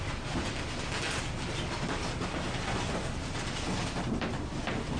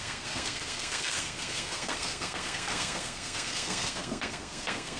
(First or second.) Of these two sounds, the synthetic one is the second